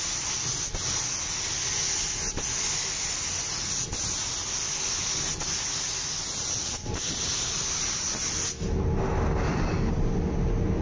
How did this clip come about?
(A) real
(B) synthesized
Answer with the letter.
A